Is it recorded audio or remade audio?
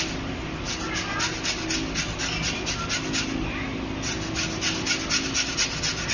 recorded